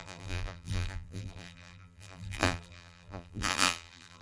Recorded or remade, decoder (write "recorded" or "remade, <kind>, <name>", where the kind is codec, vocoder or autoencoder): remade, vocoder, BigVGAN v2